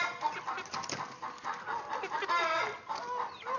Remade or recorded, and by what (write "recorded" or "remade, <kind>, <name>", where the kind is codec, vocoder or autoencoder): recorded